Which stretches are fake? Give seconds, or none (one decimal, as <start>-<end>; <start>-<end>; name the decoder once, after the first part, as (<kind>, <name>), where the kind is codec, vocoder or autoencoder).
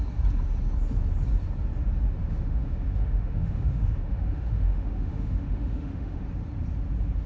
2.2-6.2 (autoencoder, DAC-VAE)